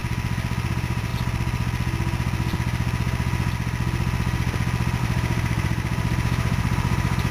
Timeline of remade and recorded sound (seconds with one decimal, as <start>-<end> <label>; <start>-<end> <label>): 0.0-0.7 recorded; 0.7-1.1 remade; 1.1-5.0 recorded; 5.0-7.3 remade